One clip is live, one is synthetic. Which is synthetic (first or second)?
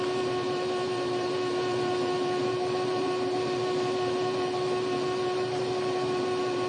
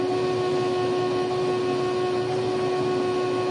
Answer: first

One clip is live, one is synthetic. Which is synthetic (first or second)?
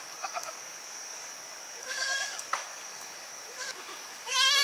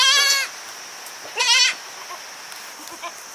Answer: first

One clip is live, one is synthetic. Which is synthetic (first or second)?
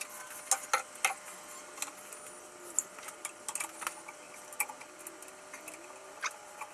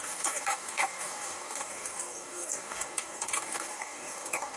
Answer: second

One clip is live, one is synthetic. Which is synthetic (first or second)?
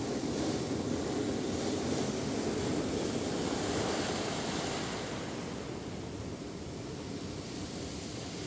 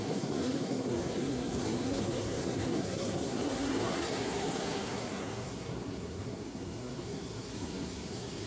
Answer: second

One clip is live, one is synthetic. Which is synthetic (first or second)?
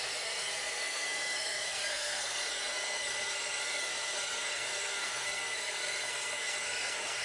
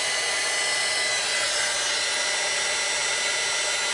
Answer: first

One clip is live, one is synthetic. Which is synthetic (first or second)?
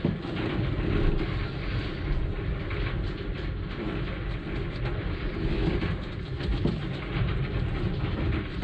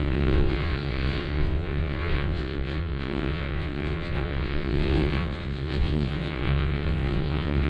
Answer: second